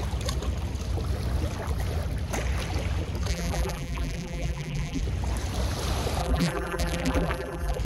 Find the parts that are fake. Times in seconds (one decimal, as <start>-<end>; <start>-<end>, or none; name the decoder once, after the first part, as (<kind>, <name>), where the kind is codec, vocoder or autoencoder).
3.3-5.0 (vocoder, BigVGAN v2); 6.2-7.8